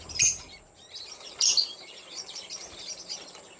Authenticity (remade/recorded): remade